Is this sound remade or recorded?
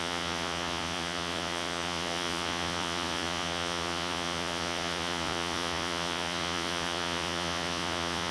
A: remade